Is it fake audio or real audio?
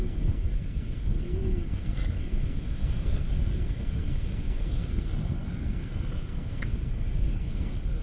fake